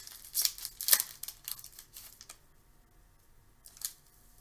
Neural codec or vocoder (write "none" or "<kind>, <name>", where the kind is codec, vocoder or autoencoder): none